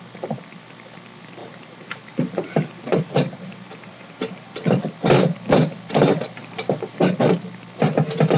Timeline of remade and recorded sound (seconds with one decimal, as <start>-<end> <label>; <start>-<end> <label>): 0.0-1.4 recorded; 1.4-4.8 remade; 4.8-6.4 recorded; 6.4-7.0 remade; 7.0-8.4 recorded